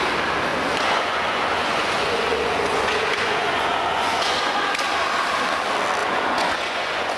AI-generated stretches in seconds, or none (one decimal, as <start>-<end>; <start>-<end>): 0.5-4.8; 6.0-7.2